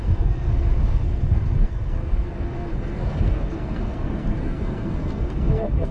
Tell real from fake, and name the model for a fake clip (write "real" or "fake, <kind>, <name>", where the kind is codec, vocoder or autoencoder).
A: fake, codec, SNAC